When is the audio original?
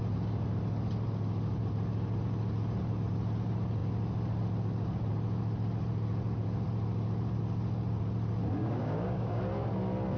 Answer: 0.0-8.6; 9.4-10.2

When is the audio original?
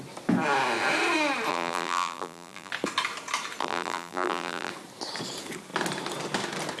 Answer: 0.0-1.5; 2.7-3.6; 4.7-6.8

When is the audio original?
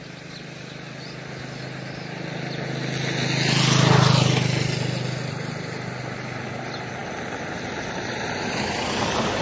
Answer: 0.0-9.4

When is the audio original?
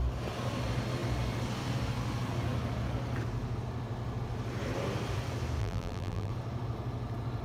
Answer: 0.0-5.6; 6.3-7.4